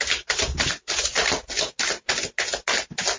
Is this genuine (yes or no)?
yes